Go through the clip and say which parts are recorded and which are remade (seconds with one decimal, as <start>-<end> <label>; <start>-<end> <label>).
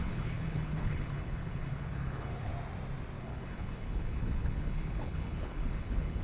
0.0-2.5 remade; 2.5-3.2 recorded; 3.2-6.2 remade